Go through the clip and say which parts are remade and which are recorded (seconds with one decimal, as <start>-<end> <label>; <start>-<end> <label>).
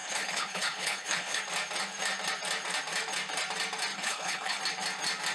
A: 0.0-1.4 remade; 1.4-3.9 recorded; 3.9-4.6 remade; 4.6-5.3 recorded